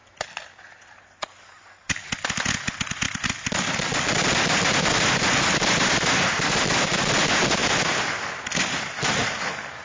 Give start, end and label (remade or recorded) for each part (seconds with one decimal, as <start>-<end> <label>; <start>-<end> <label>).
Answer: 0.0-9.8 recorded